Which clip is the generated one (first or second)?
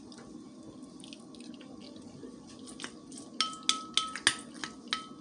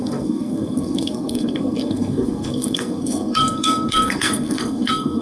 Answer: second